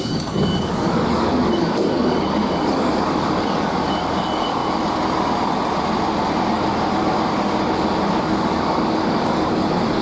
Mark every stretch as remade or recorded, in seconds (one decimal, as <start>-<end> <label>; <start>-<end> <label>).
0.0-4.6 remade; 4.6-8.2 recorded; 8.2-10.0 remade